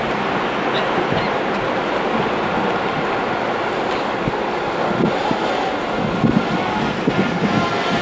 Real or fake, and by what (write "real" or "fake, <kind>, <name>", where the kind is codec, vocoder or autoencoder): real